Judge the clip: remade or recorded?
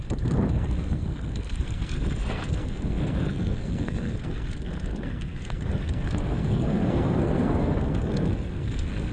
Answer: remade